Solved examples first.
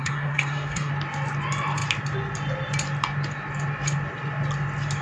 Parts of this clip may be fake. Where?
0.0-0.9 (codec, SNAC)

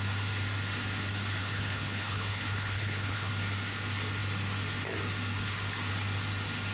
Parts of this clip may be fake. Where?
1.4-3.3 (codec, HILCodec)

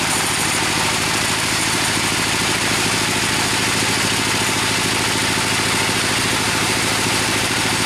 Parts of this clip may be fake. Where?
0.0-2.9 (vocoder, BigVGAN v2); 6.2-7.9